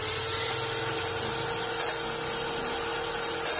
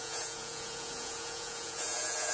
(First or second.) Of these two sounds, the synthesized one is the second